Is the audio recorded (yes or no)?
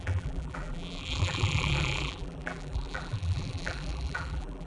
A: no